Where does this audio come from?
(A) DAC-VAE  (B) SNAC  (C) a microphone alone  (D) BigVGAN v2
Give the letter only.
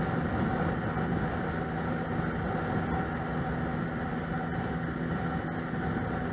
C